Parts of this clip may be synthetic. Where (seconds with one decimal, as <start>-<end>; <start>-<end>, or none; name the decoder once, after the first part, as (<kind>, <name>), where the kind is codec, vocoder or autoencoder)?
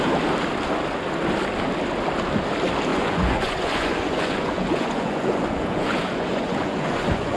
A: 2.9-7.4 (vocoder, Vocos)